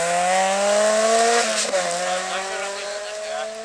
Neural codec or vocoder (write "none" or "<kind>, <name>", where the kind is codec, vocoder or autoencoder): none